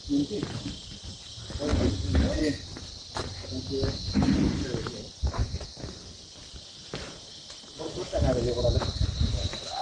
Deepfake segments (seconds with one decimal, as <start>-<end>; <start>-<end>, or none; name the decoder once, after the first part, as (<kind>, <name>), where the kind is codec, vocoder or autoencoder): none